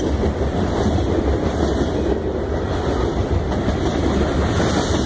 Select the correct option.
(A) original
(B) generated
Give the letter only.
A